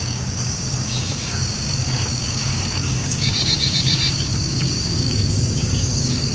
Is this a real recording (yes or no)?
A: no